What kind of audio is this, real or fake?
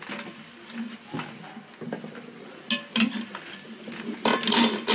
real